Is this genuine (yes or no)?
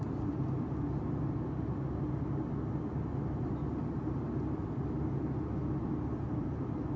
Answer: yes